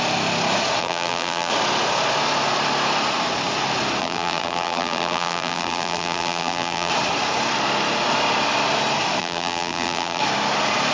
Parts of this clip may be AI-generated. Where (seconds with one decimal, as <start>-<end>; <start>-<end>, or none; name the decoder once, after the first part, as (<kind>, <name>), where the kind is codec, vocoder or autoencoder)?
0.8-1.5 (vocoder, BigVGAN v2); 4.0-6.9; 9.2-10.2